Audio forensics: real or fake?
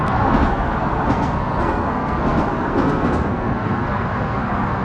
fake